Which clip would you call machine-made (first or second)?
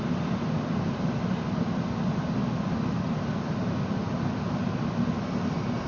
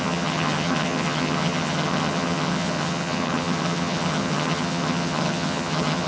second